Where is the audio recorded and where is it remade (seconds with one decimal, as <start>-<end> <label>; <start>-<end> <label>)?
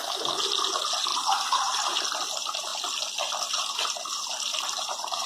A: 0.0-1.1 recorded; 1.1-2.0 remade; 2.0-4.5 recorded; 4.5-5.3 remade